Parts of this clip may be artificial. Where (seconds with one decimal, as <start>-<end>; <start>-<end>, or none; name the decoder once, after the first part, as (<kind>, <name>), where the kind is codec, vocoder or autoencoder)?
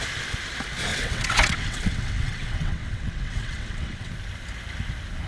0.9-4.1 (vocoder, WaveNeXt)